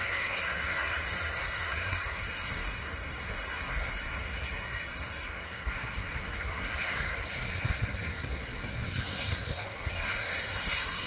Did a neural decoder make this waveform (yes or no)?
yes